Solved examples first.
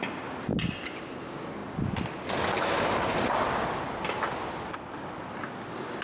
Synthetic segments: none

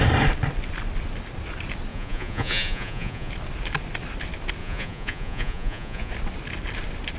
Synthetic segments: 1.9-3.3 (vocoder, Vocos); 4.6-6.1